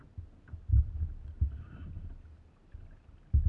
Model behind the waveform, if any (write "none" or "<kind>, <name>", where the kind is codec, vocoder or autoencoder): none